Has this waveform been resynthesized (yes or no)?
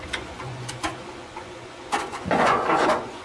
yes